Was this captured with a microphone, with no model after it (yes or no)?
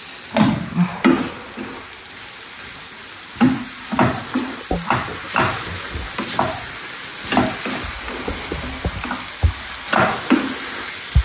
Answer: yes